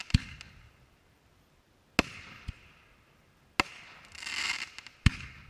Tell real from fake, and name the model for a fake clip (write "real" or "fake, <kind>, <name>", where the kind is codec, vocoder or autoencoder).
real